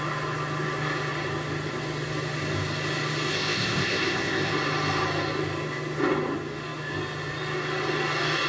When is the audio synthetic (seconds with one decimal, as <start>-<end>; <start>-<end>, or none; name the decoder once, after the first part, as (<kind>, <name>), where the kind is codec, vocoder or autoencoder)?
3.3-4.5 (codec, ZipCodec)